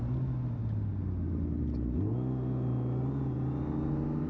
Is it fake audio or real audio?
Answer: real